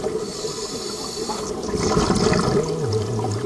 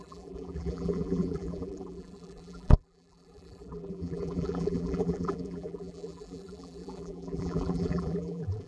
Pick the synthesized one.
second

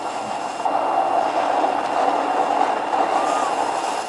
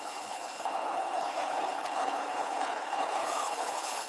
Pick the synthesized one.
second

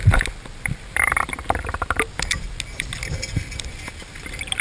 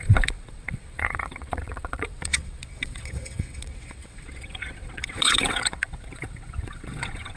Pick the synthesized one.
second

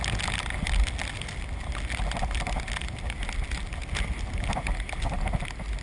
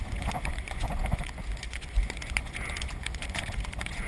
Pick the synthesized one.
second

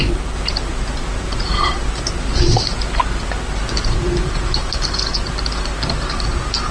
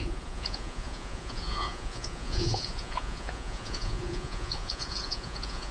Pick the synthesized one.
second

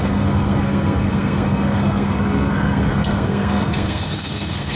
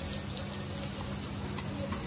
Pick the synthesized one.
first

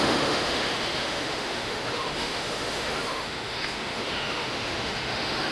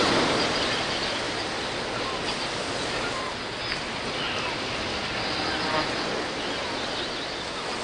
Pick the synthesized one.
first